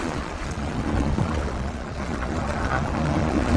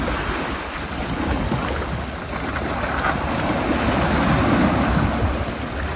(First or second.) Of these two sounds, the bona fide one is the second